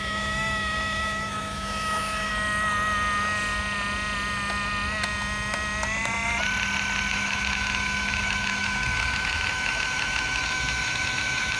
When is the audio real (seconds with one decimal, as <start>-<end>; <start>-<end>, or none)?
2.3-7.1